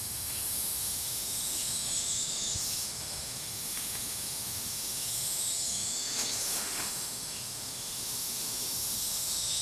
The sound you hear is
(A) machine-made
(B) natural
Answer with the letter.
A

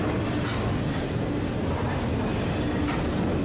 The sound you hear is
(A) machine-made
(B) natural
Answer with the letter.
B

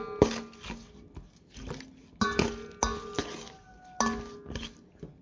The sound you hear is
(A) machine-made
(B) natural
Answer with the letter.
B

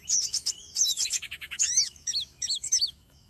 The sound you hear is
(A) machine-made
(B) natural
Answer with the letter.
A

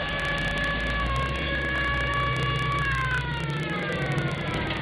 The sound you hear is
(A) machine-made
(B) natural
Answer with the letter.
B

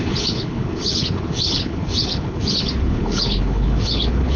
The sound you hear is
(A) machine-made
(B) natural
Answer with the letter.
A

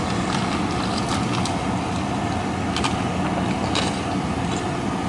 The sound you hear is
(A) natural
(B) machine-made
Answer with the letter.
A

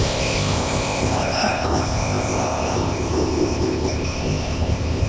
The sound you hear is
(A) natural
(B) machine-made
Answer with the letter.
B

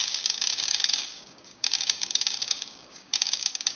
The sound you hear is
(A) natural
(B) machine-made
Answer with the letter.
B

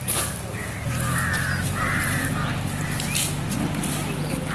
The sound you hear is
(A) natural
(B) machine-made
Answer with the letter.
A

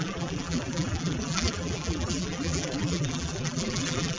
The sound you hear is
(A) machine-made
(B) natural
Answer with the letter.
A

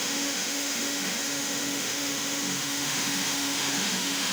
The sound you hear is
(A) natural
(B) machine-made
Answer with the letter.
B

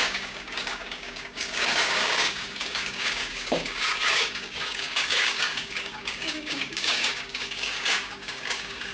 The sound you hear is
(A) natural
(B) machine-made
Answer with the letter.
B